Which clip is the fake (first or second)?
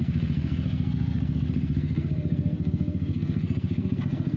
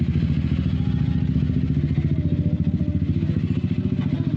first